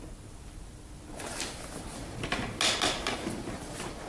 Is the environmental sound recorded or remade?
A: recorded